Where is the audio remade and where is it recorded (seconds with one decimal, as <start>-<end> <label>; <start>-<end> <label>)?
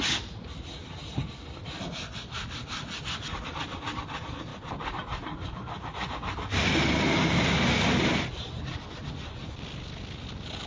0.0-10.7 recorded